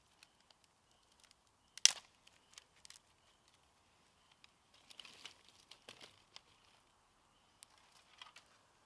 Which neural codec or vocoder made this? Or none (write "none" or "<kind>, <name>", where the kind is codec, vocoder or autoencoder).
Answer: none